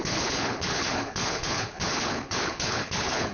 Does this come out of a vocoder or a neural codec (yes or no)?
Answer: yes